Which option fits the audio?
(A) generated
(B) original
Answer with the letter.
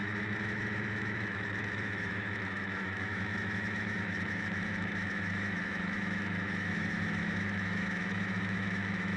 A